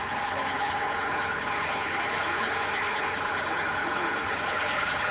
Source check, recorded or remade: remade